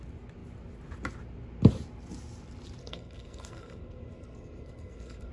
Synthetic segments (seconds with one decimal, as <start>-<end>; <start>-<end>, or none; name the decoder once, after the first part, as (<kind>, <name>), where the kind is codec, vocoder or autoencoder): 2.8-5.3 (codec, SNAC)

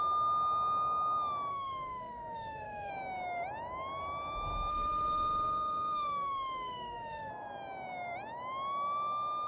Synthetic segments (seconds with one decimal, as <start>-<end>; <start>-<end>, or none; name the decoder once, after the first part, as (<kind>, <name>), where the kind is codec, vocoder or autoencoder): 1.5-2.9 (autoencoder, DAC-VAE); 4.7-7.3

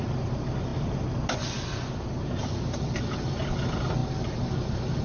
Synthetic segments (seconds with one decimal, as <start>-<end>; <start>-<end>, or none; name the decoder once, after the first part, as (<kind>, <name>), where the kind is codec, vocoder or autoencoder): none

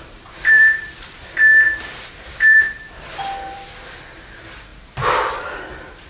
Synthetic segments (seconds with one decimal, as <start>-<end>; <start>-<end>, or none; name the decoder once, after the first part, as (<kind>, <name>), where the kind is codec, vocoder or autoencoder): 0.0-4.7 (vocoder, BigVGAN v2); 5.3-6.1